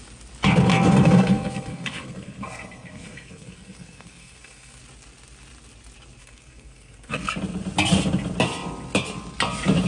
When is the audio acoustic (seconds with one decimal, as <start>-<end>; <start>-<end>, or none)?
0.0-0.7; 4.8-6.2; 7.3-9.9